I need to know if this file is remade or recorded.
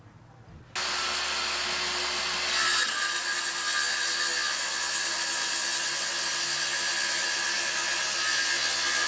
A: recorded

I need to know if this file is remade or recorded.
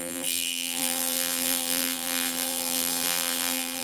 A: remade